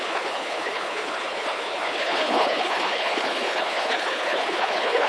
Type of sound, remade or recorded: remade